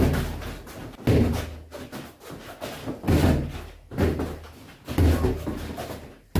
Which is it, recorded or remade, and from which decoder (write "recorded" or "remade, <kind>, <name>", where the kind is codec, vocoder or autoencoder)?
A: recorded